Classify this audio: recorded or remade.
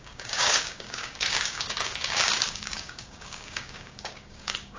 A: remade